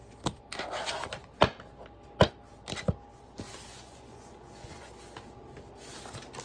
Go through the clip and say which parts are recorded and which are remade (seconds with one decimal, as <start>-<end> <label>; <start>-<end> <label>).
0.0-3.7 recorded; 3.7-4.9 remade; 4.9-6.4 recorded